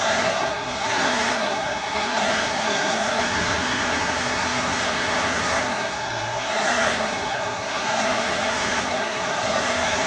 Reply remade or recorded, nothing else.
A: remade